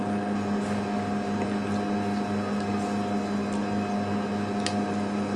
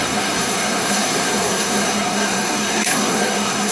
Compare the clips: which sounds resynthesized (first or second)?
second